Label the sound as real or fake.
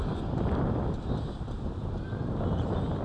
real